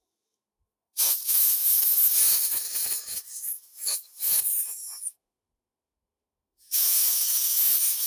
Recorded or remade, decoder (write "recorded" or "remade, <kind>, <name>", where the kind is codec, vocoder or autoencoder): remade, autoencoder, DAC-VAE